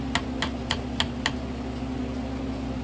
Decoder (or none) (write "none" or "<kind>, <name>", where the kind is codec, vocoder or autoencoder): none